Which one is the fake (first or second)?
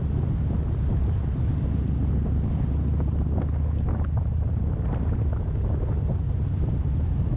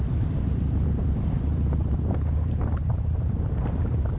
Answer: second